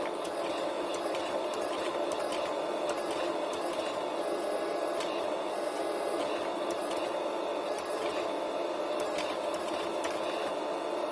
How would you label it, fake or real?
real